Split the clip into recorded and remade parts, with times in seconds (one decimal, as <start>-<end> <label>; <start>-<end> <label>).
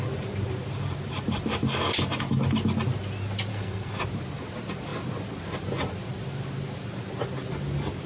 0.0-3.5 recorded; 3.5-4.0 remade; 4.0-8.1 recorded